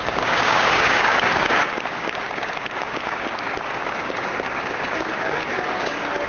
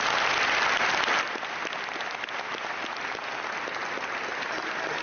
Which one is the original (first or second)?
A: second